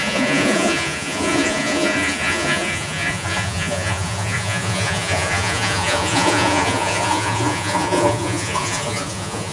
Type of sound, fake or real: fake